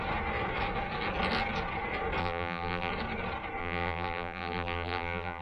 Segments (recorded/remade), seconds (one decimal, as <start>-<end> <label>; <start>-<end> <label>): 0.0-2.2 recorded; 2.2-2.9 remade; 2.9-3.6 recorded; 3.6-5.4 remade